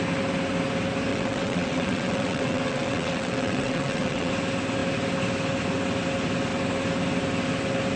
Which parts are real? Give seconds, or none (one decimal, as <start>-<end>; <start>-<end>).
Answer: 0.0-1.1; 4.3-8.0